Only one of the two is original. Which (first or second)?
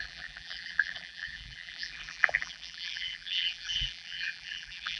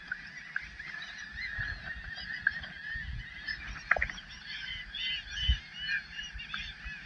second